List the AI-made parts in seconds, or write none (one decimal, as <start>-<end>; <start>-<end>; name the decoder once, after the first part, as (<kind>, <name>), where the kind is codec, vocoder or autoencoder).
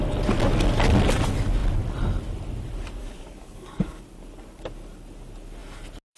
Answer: 3.0-4.0 (codec, DAC)